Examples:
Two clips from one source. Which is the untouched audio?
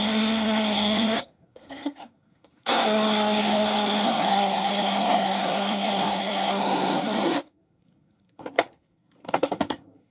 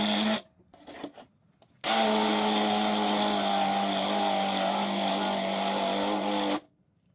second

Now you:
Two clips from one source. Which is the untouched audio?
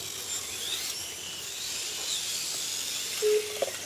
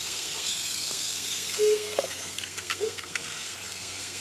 first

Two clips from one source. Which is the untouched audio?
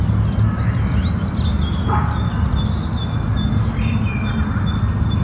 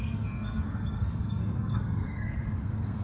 first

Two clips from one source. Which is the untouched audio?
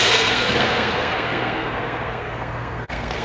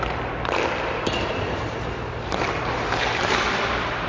second